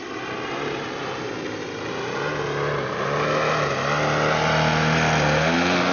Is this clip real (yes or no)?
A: yes